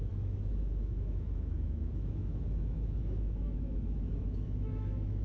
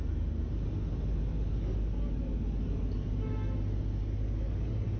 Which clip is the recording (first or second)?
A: second